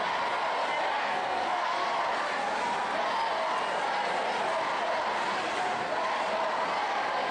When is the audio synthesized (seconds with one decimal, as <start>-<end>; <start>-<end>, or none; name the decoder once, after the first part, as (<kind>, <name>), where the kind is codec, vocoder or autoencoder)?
1.0-2.0 (codec, SNAC)